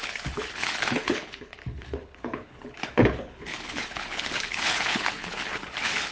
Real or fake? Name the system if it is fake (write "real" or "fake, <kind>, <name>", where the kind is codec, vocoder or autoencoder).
fake, codec, HILCodec